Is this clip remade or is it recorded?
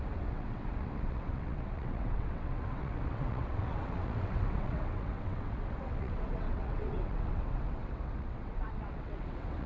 remade